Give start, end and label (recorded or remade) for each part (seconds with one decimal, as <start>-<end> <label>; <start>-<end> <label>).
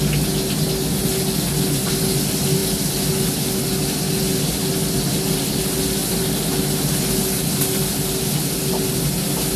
0.0-9.6 recorded